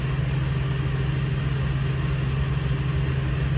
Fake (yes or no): no